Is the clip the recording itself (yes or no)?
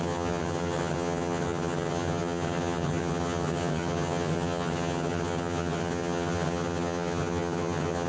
no